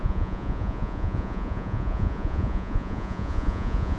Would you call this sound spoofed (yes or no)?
yes